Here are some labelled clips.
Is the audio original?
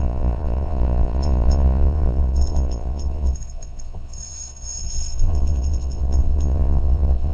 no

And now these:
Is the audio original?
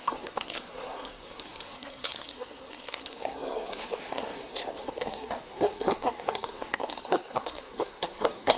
no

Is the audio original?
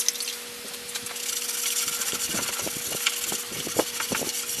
yes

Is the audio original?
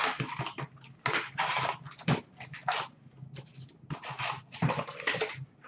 yes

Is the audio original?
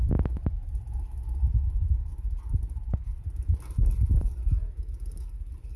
yes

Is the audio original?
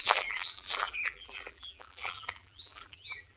no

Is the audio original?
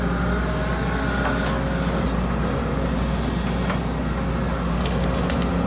yes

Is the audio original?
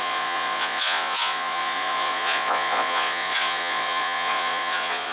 no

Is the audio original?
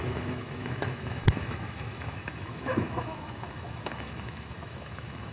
no